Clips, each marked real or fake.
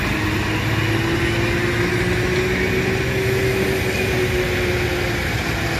real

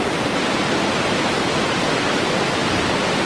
real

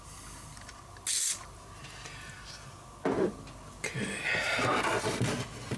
real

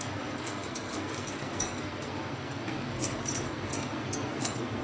fake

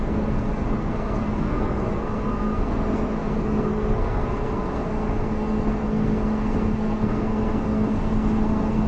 fake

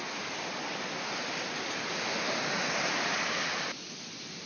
real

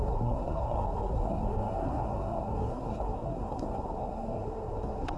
fake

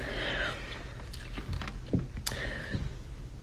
real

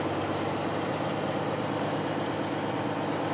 real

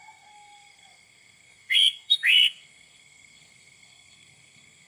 fake